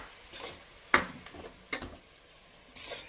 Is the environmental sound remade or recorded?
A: recorded